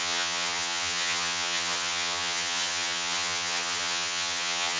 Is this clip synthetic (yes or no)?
yes